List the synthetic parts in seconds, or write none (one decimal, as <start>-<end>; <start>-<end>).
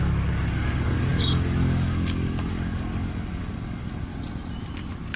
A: 0.0-4.1